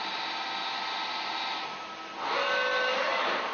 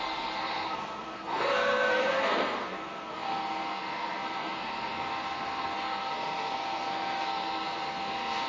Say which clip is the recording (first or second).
first